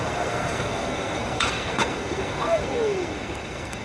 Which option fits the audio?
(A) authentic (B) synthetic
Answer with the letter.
B